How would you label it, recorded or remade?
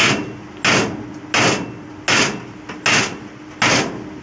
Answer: recorded